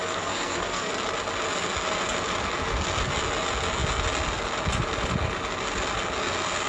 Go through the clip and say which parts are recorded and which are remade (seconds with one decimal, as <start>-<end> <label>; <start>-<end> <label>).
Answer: 0.0-0.9 remade; 0.9-6.7 recorded